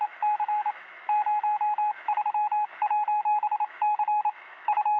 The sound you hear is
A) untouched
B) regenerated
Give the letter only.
B